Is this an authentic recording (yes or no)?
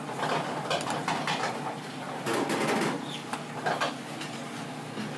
yes